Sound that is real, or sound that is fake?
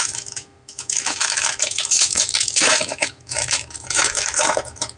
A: fake